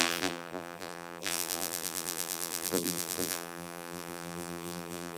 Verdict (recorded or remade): remade